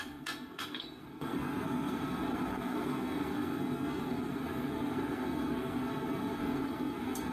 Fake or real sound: fake